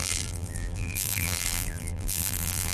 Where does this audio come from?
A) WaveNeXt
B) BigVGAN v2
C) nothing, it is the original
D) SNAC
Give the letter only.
B